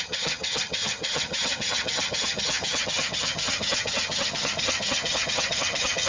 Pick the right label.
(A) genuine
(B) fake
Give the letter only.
B